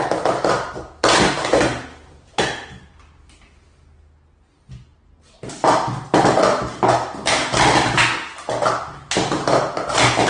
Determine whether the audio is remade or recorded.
recorded